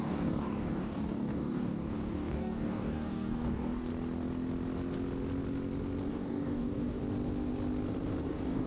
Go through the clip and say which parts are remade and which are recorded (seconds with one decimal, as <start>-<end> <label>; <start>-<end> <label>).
0.0-3.9 remade; 3.9-6.1 recorded; 6.1-7.0 remade; 7.0-8.2 recorded; 8.2-8.7 remade